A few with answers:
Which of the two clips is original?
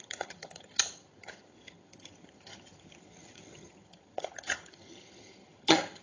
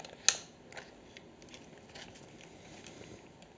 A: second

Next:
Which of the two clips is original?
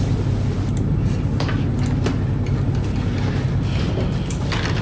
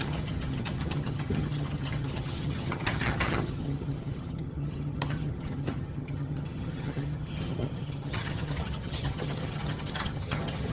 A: first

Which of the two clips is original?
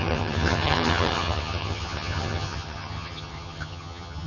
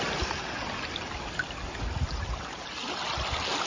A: second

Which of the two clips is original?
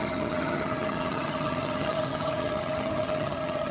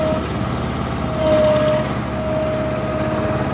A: second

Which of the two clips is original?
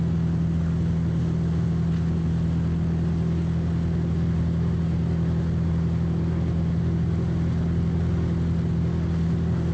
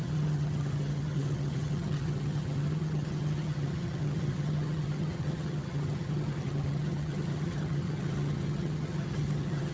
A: first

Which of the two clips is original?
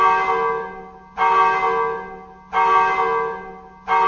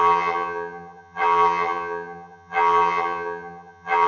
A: first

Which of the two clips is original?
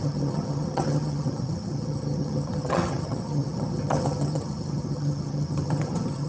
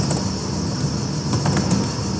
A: second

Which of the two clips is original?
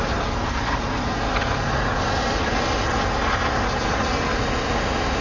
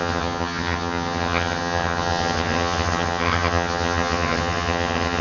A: first